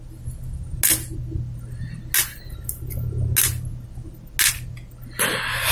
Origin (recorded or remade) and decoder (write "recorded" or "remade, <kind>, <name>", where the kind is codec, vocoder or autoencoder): recorded